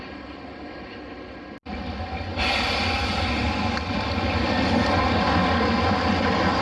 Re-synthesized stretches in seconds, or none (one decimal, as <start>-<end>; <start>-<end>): none